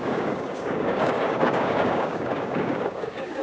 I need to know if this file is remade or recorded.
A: remade